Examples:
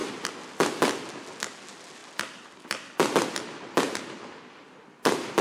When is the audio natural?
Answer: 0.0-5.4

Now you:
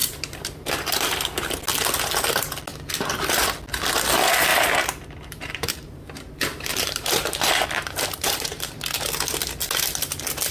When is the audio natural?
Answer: 1.4-4.5; 8.8-10.5

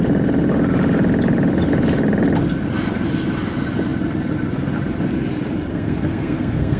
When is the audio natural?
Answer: 0.0-5.7

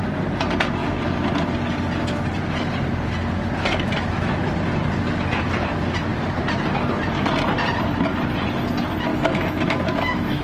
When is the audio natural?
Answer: 0.0-9.1